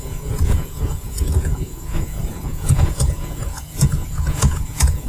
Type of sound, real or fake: fake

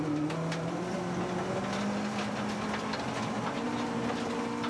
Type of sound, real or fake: real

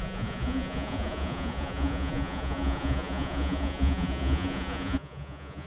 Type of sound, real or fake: fake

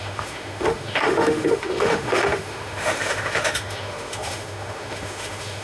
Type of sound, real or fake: fake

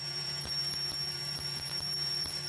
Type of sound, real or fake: fake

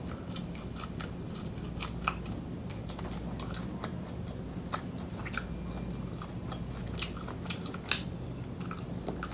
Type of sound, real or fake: real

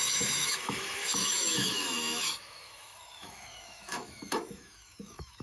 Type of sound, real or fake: fake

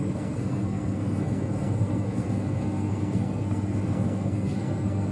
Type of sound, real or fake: fake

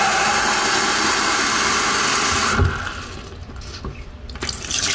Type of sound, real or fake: real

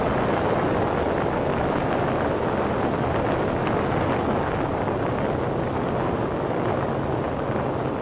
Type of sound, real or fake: real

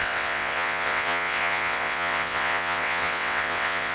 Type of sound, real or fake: fake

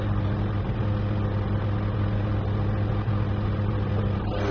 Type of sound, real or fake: real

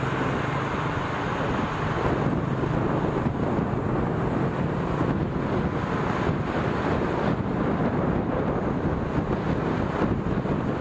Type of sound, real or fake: real